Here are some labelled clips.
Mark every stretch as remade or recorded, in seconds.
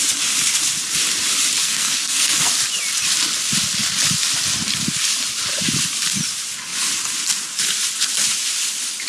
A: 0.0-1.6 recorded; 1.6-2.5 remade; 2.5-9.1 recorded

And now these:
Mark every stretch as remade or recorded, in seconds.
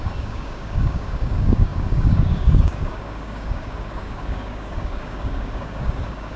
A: 0.0-6.4 remade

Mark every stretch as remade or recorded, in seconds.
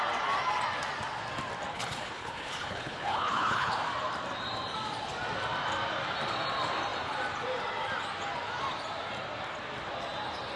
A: 0.0-1.7 recorded; 1.7-3.7 remade; 3.7-10.6 recorded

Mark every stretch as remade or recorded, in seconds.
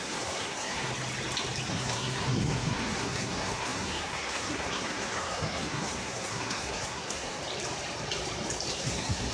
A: 0.0-0.9 remade; 0.9-1.7 recorded; 1.7-7.4 remade; 7.4-8.7 recorded; 8.7-9.3 remade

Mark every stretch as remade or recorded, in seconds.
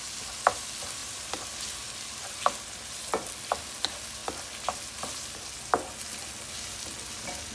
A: 0.0-1.0 recorded; 1.0-2.0 remade; 2.0-7.5 recorded